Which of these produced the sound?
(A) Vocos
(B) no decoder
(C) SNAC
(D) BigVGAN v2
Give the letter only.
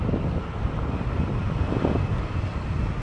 B